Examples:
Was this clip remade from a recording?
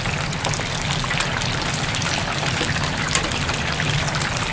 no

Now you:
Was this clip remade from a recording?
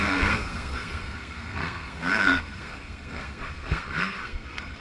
yes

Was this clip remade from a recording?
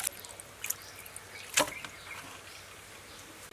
no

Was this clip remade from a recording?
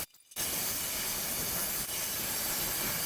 no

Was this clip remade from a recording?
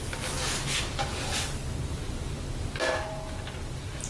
no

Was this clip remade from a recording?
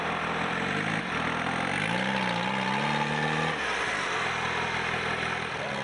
no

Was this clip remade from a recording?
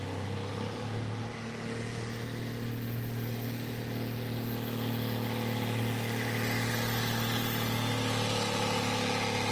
no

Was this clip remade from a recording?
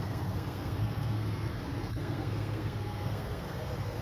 yes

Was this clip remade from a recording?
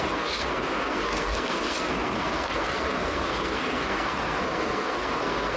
yes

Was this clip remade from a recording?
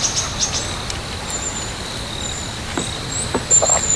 no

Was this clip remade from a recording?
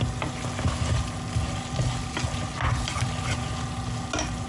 no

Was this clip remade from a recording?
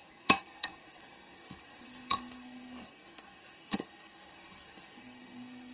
yes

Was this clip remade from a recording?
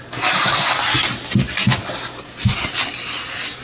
no